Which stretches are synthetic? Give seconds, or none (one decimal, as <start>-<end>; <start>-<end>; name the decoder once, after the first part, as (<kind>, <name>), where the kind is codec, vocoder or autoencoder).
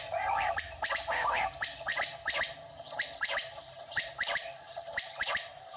0.0-1.9 (vocoder, BigVGAN v2); 3.2-5.8